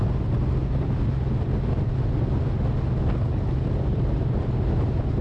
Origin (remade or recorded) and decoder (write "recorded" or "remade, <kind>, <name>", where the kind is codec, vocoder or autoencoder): recorded